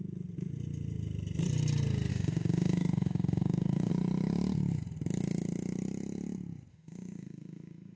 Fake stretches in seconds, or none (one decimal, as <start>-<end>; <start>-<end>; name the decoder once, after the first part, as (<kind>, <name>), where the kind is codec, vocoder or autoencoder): 2.1-3.9 (autoencoder, DAC-VAE); 6.7-8.0